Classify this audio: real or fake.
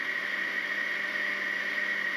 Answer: real